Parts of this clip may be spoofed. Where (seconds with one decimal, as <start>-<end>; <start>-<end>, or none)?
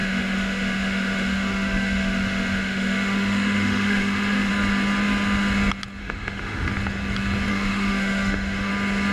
0.0-4.5; 6.0-6.7; 7.5-8.7